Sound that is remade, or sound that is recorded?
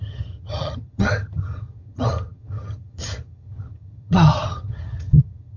remade